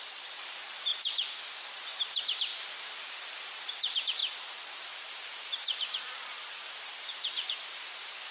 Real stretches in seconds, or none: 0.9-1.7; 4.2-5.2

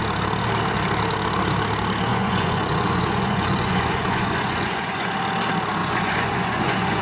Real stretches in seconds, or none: 0.0-2.1; 5.1-5.8

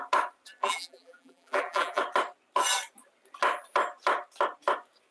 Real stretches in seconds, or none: 0.0-0.6; 2.0-5.1

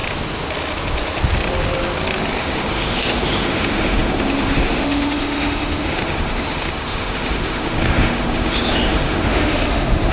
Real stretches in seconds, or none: 0.0-2.4

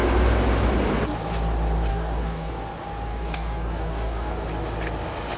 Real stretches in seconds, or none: 0.0-1.9; 2.5-3.1; 4.3-5.4

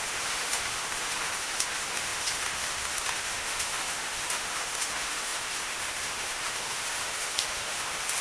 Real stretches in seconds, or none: none

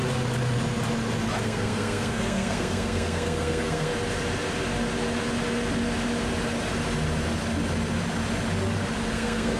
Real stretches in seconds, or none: 0.0-1.4; 3.9-9.1